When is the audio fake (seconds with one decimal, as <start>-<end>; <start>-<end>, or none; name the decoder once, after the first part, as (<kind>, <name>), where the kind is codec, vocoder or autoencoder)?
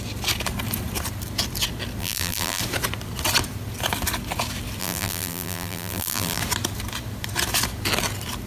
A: 2.0-2.6 (vocoder, BigVGAN v2); 4.8-6.4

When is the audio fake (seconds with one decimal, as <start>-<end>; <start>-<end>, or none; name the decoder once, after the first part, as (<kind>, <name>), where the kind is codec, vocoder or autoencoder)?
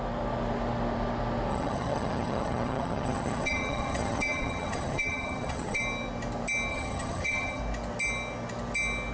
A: 1.5-5.8 (vocoder, HiFi-GAN); 6.7-7.6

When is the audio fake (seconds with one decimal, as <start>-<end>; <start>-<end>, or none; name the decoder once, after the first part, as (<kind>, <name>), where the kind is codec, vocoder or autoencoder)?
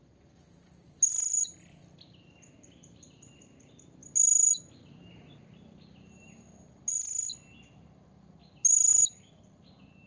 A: none